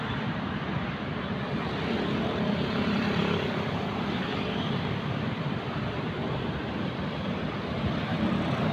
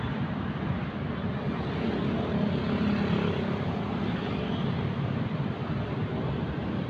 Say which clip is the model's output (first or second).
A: first